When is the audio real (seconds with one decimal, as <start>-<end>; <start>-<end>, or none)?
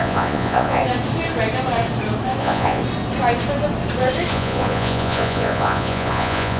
0.8-2.4; 2.8-4.3